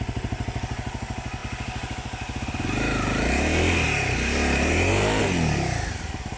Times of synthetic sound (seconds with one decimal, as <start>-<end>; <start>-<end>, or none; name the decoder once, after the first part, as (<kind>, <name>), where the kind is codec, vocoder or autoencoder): none